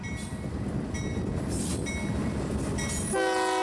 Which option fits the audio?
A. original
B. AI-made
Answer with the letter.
A